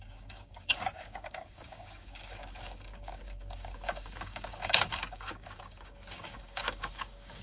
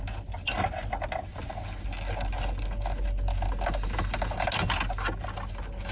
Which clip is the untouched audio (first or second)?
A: second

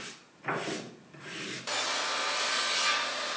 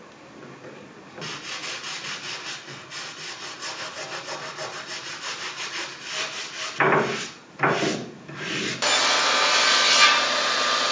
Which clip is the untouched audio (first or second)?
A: second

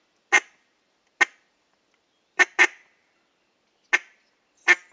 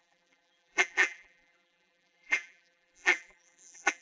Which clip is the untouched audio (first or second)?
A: first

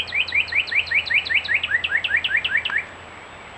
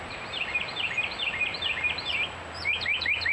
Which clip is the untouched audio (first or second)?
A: first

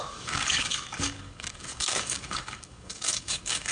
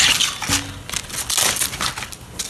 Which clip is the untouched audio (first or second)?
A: second